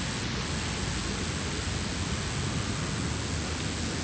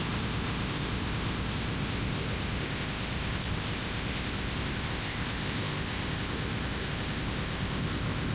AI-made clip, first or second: second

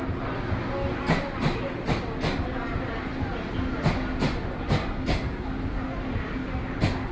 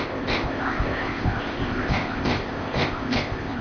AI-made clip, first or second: second